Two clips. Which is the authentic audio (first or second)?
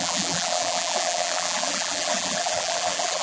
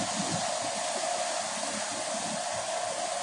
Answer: second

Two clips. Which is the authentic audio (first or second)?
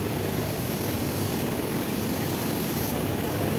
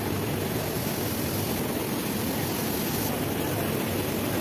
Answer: second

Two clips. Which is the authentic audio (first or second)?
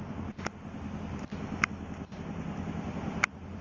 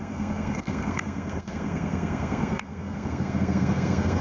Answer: first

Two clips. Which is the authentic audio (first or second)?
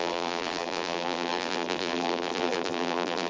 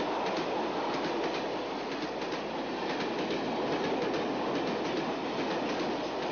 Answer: second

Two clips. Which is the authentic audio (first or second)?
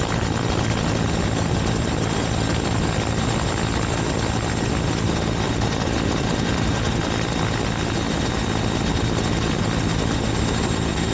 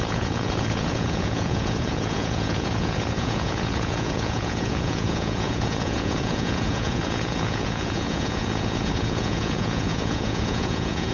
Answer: first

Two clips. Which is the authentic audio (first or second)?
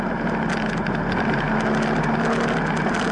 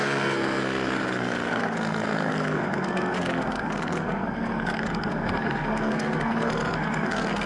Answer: first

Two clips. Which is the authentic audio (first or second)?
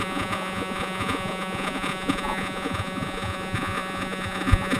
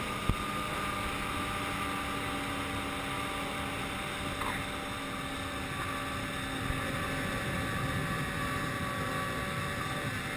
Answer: second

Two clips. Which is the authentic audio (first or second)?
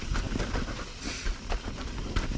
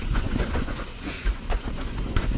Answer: first